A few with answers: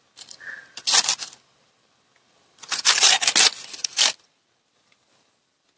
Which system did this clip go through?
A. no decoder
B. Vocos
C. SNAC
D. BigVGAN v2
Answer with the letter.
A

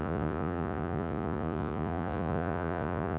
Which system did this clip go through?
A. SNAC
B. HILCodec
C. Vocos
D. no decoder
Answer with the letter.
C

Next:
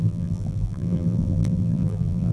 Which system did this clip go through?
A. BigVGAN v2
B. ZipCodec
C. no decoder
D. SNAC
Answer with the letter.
A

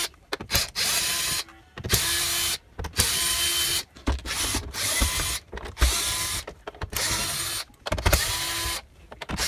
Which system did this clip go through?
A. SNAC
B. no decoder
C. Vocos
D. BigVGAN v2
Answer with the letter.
B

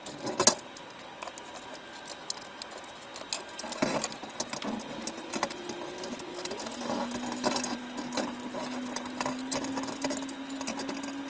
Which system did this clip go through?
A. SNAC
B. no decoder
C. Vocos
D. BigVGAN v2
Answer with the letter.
B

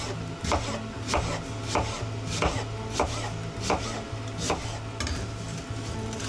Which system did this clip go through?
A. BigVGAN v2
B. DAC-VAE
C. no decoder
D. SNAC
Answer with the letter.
C